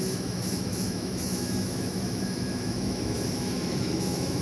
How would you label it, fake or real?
fake